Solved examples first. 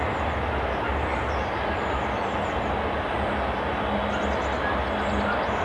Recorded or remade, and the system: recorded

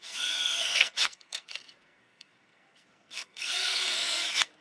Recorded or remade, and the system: remade, codec, SNAC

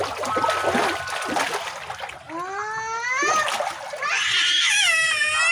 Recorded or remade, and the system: recorded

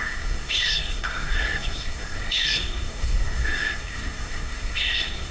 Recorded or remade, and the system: remade, codec, SNAC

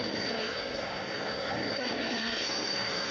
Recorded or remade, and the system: remade, codec, SNAC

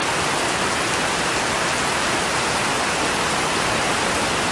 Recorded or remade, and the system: recorded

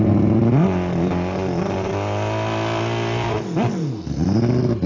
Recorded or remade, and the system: recorded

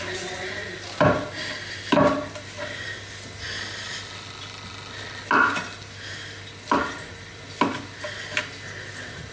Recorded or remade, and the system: recorded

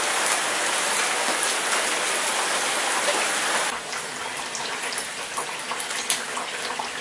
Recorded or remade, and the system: recorded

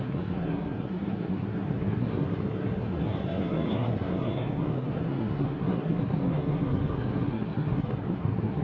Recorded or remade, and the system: remade, codec, SNAC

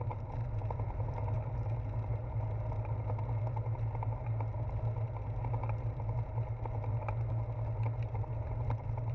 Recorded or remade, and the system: recorded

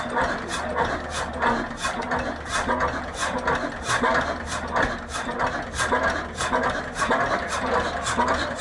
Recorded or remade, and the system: recorded